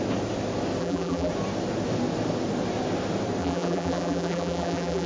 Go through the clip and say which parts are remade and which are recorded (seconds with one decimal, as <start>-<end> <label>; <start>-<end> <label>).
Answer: 0.0-0.8 recorded; 0.8-1.3 remade; 1.3-3.4 recorded; 3.4-5.1 remade